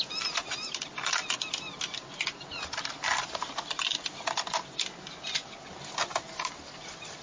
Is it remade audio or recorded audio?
recorded